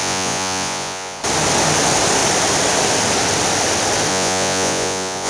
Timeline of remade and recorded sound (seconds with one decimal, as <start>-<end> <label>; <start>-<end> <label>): 0.0-1.2 remade; 1.2-4.1 recorded; 4.1-5.3 remade